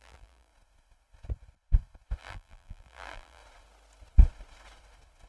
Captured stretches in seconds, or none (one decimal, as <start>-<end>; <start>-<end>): 0.5-2.2; 3.4-5.3